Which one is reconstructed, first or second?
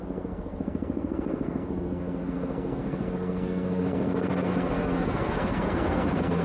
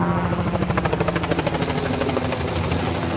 first